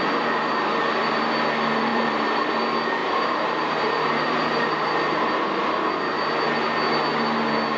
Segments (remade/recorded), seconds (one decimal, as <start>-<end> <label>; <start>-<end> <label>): 0.0-1.9 recorded; 1.9-2.5 remade; 2.5-3.0 recorded; 3.0-5.3 remade; 5.3-7.8 recorded